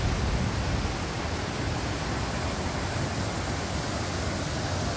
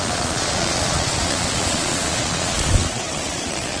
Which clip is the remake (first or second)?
second